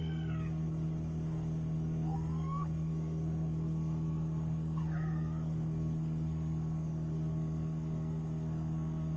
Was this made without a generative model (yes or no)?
no